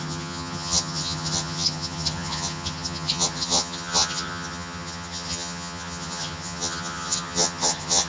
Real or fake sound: fake